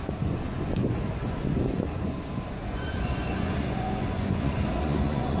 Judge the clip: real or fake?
fake